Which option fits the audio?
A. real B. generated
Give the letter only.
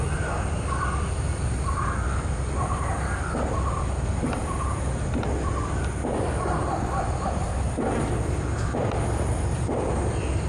B